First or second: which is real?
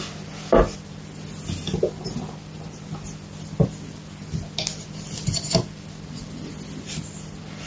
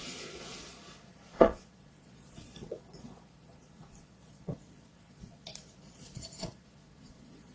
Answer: first